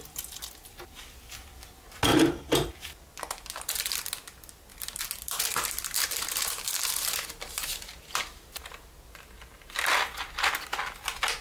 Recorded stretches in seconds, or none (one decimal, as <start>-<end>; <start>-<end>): 0.0-2.1; 2.7-4.7; 6.7-11.4